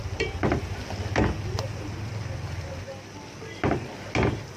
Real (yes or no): yes